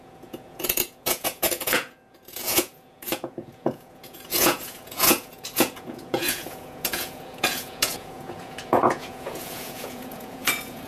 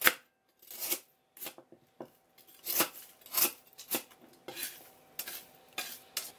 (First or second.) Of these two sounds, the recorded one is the second